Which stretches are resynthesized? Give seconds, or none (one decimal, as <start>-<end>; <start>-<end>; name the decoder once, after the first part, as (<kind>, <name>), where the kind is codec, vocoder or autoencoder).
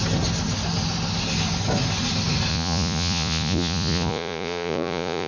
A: 2.5-5.3 (vocoder, Vocos)